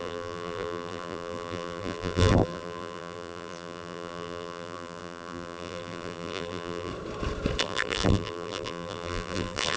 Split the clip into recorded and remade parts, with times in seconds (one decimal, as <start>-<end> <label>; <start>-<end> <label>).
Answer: 0.0-6.9 remade; 6.9-7.6 recorded; 7.6-9.8 remade